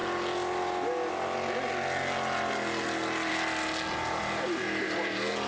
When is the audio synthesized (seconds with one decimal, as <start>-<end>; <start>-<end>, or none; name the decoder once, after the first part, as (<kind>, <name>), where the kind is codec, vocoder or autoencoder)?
none